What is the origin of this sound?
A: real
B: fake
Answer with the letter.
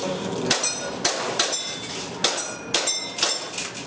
A